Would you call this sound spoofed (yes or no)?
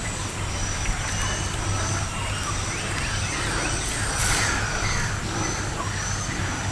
no